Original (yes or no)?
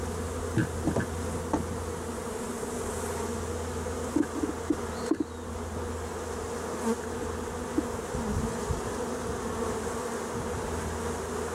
yes